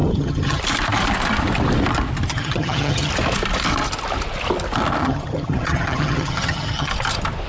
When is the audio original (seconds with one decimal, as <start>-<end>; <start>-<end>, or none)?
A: 0.6-2.3; 3.1-5.0; 6.9-7.5